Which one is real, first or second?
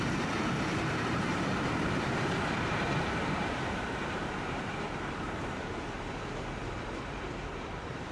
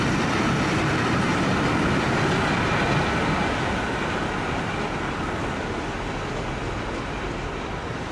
second